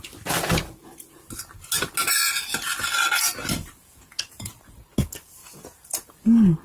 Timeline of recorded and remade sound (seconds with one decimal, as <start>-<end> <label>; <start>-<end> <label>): 0.0-3.8 recorded; 3.8-4.8 remade; 4.8-5.4 recorded; 5.4-6.1 remade; 6.1-6.6 recorded